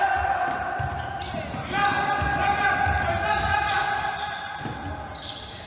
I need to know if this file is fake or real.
real